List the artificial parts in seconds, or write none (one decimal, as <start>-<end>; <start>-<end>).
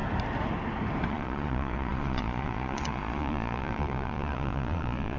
1.1-5.2